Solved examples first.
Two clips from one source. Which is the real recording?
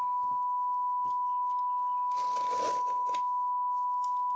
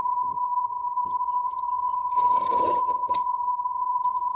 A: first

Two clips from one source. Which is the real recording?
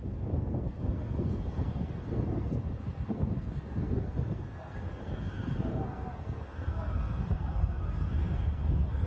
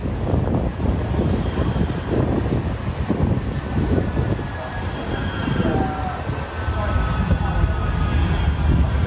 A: second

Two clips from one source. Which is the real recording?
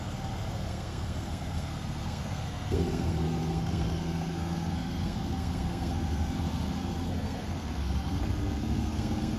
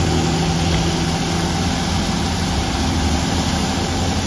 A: second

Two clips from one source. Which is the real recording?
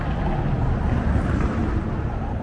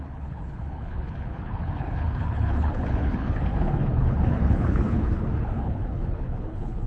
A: first